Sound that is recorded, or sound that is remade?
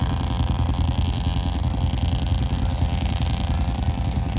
recorded